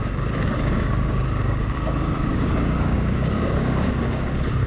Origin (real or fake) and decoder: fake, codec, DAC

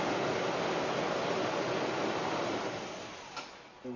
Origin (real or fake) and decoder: real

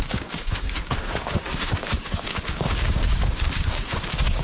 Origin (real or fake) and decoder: fake, codec, DAC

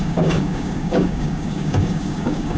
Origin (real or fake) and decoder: fake, codec, DAC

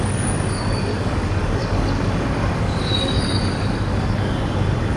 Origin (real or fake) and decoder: fake, codec, DAC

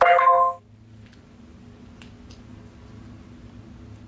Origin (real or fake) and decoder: real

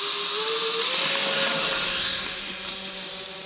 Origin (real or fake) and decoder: real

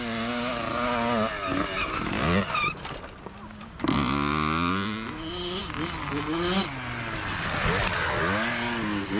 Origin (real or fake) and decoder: real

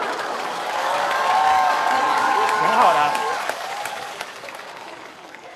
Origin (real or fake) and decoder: fake, codec, DAC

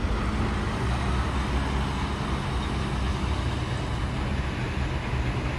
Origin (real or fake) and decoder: real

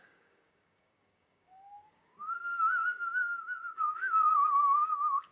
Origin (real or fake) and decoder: fake, codec, DAC